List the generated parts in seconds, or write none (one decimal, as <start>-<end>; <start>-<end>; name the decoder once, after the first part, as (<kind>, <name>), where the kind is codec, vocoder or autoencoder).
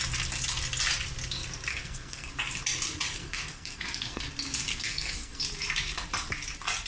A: 1.7-2.3 (codec, SNAC); 3.2-4.2; 4.7-5.4